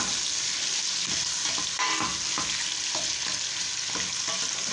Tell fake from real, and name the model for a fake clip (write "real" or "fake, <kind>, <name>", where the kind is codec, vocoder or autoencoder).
real